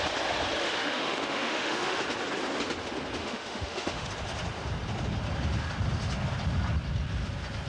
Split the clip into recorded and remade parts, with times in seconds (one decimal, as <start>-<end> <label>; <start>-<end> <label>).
0.0-0.6 recorded; 0.6-2.0 remade; 2.0-3.2 recorded; 3.2-4.1 remade; 4.1-7.7 recorded